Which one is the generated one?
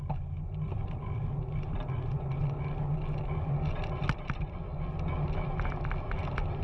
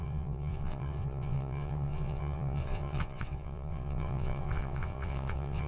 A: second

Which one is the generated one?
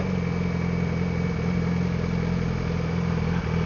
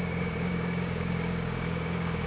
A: second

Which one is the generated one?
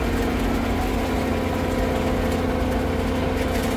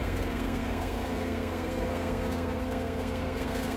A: second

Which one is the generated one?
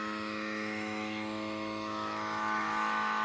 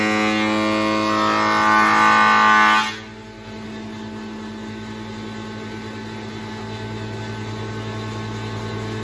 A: first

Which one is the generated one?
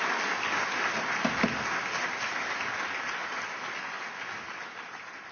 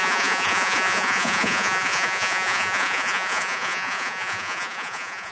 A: second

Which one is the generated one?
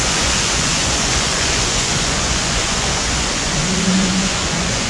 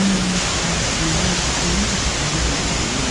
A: first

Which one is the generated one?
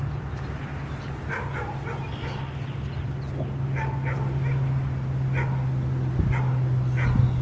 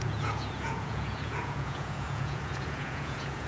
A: second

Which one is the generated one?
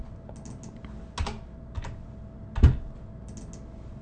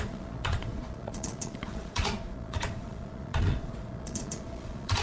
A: second